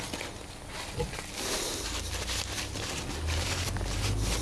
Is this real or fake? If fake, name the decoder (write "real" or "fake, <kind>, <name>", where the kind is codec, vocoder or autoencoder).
real